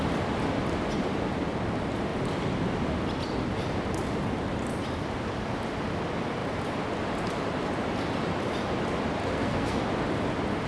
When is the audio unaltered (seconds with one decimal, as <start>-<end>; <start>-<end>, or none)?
0.0-9.2; 9.8-10.7